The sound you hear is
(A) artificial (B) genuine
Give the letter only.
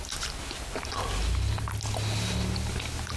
B